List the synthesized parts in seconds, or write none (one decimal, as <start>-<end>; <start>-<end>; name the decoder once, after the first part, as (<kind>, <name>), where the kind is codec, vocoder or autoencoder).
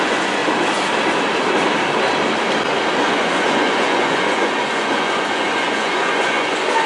0.0-0.4 (vocoder, Vocos); 3.0-6.9